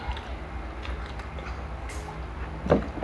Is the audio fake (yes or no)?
no